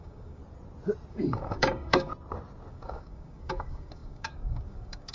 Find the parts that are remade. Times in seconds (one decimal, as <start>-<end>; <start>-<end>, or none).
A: 0.0-0.4; 1.1-2.1; 2.7-5.1